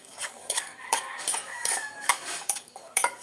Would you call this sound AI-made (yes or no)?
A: yes